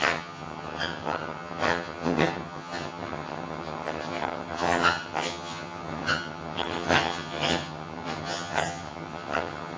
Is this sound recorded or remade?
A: remade